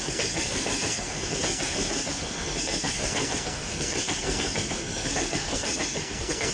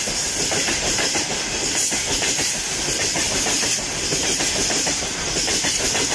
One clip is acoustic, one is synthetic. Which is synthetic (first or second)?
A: first